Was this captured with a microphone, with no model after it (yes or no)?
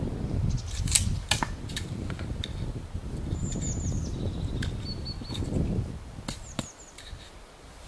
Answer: yes